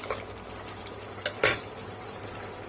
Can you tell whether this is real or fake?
real